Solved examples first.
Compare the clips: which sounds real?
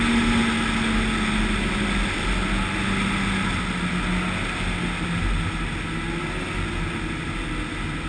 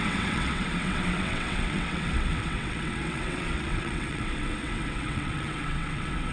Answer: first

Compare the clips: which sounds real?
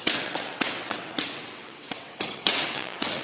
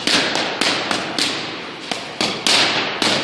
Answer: second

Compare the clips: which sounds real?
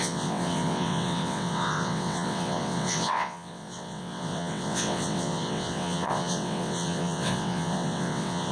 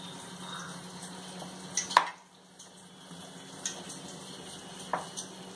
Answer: second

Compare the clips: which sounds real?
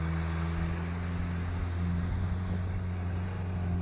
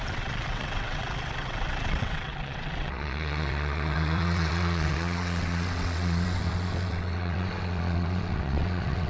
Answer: first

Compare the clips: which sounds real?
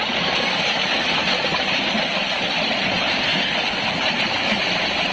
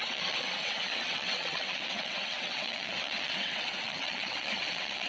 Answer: first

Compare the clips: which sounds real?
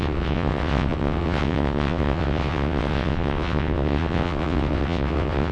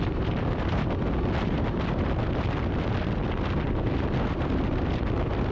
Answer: second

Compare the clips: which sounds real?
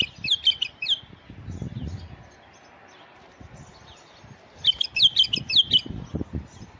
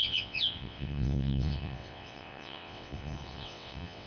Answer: first